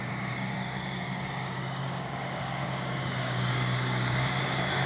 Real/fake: fake